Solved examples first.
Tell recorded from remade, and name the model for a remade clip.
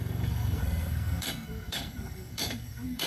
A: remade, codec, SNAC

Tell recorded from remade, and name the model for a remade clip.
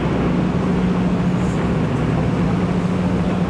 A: recorded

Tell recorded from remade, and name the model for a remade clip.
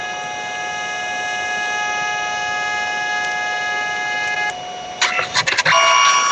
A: recorded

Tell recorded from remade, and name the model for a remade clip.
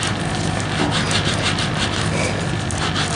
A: recorded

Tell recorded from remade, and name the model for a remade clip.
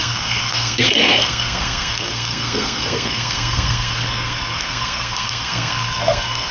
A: remade, codec, SNAC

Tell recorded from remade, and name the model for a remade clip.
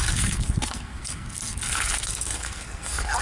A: remade, codec, SNAC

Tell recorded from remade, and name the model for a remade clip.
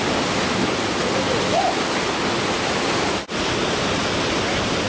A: recorded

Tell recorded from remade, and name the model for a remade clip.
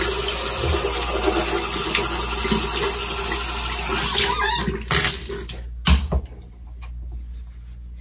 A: recorded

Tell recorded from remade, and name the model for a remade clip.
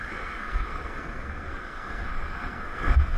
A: remade, codec, SNAC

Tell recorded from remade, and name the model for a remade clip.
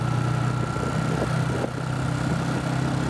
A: recorded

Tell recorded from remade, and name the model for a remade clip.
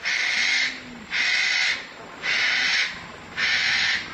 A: recorded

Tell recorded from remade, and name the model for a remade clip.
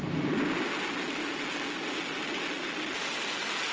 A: recorded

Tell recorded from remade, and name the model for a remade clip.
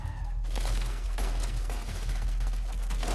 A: remade, codec, SNAC